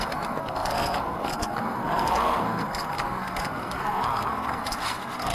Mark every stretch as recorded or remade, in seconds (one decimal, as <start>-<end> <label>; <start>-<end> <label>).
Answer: 0.0-5.3 remade